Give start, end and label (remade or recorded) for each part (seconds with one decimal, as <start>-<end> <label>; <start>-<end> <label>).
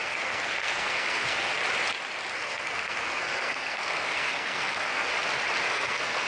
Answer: 0.0-1.6 remade; 1.6-2.3 recorded; 2.3-5.1 remade; 5.1-5.7 recorded; 5.7-6.3 remade